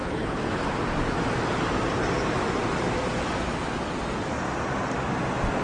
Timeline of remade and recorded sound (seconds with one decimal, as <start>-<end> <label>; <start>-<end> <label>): 0.0-0.6 remade; 0.6-5.6 recorded